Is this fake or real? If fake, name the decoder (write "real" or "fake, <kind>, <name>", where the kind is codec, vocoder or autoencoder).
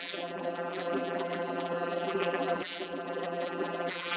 fake, vocoder, BigVGAN v2